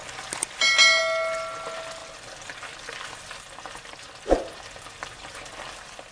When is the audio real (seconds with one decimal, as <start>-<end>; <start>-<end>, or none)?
0.0-2.0